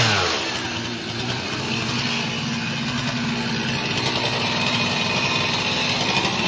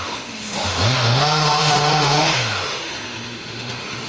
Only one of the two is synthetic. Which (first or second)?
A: second